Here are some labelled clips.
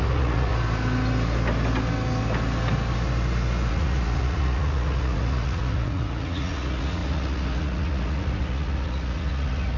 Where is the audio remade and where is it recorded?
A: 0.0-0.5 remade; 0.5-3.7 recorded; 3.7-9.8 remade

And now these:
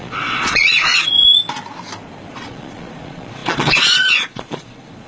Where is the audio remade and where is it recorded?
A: 0.0-1.0 remade; 1.0-2.3 recorded; 2.3-5.1 remade

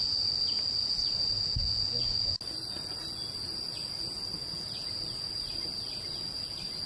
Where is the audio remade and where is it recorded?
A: 0.0-0.8 recorded; 0.8-1.3 remade; 1.3-6.9 recorded

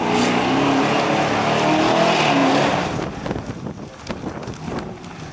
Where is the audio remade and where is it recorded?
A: 0.0-5.3 recorded

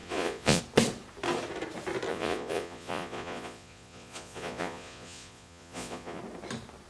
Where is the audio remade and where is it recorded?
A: 0.0-0.6 remade; 0.6-2.1 recorded; 2.1-6.2 remade; 6.2-6.9 recorded

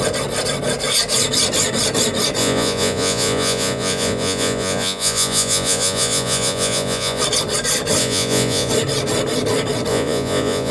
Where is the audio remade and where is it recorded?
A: 0.0-2.4 recorded; 2.4-7.2 remade; 7.2-8.0 recorded; 8.0-8.7 remade; 8.7-9.9 recorded; 9.9-10.7 remade

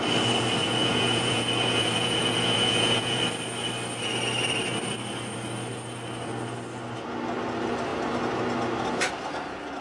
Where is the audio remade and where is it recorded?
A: 0.0-0.6 recorded; 0.6-3.2 remade; 3.2-9.8 recorded

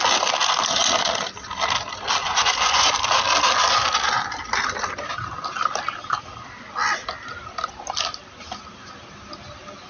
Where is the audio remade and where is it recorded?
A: 0.0-2.2 recorded; 2.2-2.9 remade; 2.9-9.9 recorded